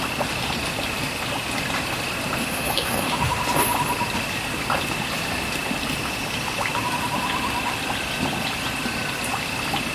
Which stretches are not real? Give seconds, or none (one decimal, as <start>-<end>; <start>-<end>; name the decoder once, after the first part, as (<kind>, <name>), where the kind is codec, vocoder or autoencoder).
2.4-3.4 (autoencoder, DAC-VAE)